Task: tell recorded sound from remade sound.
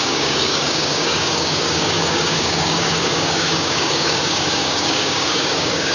remade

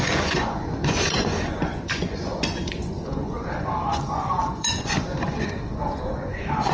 remade